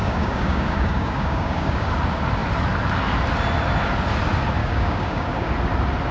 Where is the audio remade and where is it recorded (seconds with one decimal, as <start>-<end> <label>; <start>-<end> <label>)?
0.0-1.9 remade; 1.9-4.6 recorded; 4.6-5.5 remade; 5.5-6.1 recorded